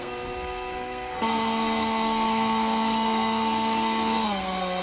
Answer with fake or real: fake